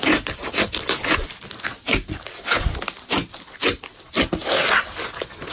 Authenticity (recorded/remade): recorded